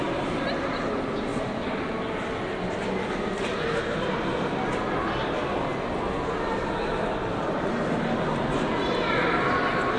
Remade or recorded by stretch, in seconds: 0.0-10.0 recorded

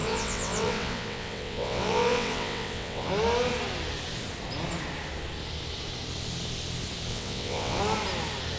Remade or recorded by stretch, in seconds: 0.0-3.1 remade; 3.1-7.1 recorded; 7.1-7.8 remade; 7.8-8.6 recorded

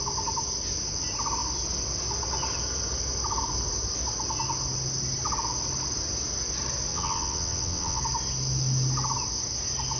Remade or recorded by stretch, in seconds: 0.0-6.9 recorded; 6.9-8.0 remade; 8.0-10.0 recorded

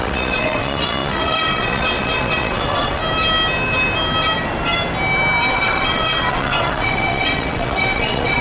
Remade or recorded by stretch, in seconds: 0.0-3.0 remade; 3.0-5.5 recorded; 5.5-8.4 remade

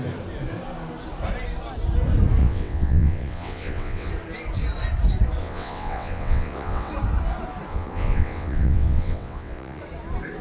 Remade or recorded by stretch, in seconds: 0.0-2.4 recorded; 2.4-4.1 remade; 4.1-5.4 recorded; 5.4-6.9 remade; 6.9-7.7 recorded; 7.7-9.8 remade; 9.8-10.4 recorded

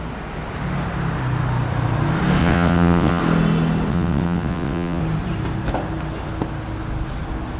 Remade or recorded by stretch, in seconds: 0.0-2.4 recorded; 2.4-3.2 remade; 3.2-3.9 recorded; 3.9-5.0 remade; 5.0-7.6 recorded

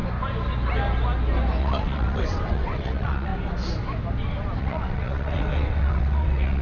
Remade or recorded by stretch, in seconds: 0.0-1.6 recorded; 1.6-3.3 remade; 3.3-4.6 recorded; 4.6-6.6 remade